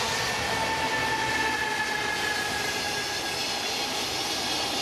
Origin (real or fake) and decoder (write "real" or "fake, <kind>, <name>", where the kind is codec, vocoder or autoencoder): real